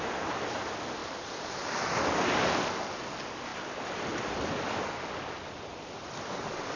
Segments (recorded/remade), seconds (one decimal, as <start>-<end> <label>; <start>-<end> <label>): 0.0-6.8 recorded